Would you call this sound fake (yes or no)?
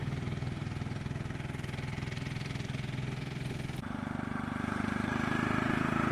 no